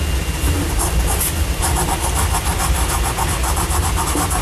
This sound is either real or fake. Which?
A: real